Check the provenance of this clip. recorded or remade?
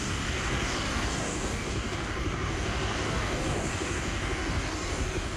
remade